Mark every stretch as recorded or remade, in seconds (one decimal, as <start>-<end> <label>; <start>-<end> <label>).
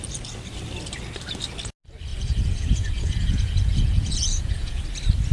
0.0-2.1 recorded; 2.1-4.8 remade; 4.8-5.3 recorded